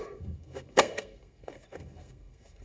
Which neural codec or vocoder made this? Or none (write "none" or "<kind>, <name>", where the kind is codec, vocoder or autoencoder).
codec, SNAC